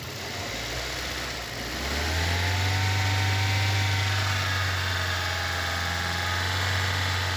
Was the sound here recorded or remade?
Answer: recorded